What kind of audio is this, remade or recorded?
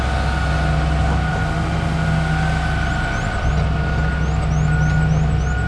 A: recorded